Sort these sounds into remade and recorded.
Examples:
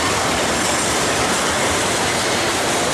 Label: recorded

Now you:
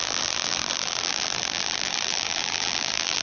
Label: remade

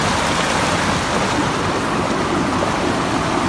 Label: recorded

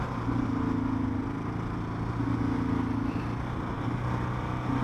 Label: recorded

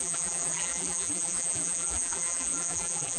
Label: remade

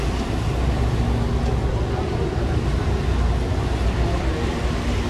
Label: recorded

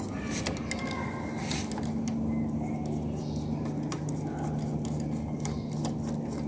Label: recorded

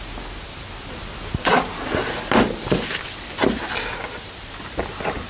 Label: recorded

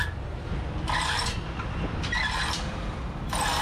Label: recorded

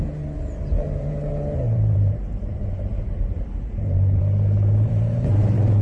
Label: remade